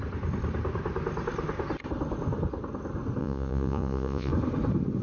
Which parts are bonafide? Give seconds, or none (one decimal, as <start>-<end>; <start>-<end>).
0.0-3.2; 4.3-5.0